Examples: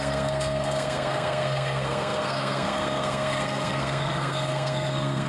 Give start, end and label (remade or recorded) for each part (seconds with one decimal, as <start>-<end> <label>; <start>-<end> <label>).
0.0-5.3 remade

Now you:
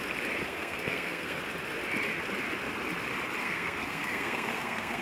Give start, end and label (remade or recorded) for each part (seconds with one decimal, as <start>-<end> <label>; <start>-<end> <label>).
0.0-0.5 recorded; 0.5-1.4 remade; 1.4-3.4 recorded; 3.4-5.0 remade

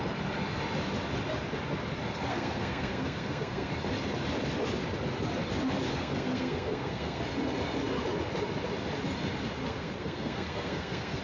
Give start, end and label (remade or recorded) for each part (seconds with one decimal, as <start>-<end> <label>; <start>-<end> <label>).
0.0-2.3 recorded; 2.3-3.7 remade; 3.7-5.9 recorded; 5.9-7.2 remade; 7.2-9.6 recorded; 9.6-11.2 remade

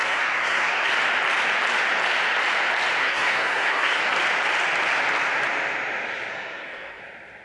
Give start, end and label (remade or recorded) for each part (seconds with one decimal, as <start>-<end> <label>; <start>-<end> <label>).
0.0-0.9 remade; 0.9-3.0 recorded; 3.0-4.0 remade; 4.0-6.3 recorded; 6.3-7.0 remade; 7.0-7.4 recorded

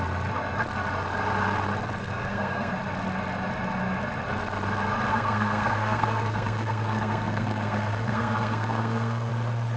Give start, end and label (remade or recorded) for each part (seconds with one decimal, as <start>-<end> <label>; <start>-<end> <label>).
0.0-2.0 recorded; 2.0-2.7 remade; 2.7-5.1 recorded; 5.1-9.3 remade; 9.3-9.8 recorded